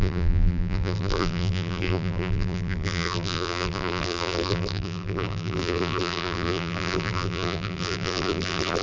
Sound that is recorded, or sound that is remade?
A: remade